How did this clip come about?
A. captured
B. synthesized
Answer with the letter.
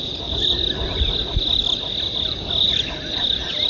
A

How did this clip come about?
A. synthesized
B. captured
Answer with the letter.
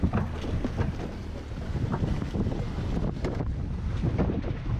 B